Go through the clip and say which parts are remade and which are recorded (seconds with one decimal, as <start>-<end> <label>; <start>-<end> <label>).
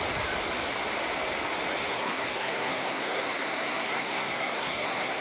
0.0-1.9 recorded; 1.9-5.2 remade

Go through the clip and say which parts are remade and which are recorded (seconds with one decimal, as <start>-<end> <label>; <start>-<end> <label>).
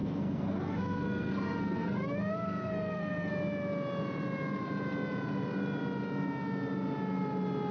0.0-3.3 remade; 3.3-7.7 recorded